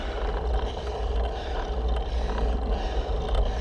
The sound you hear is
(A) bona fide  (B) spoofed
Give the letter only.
A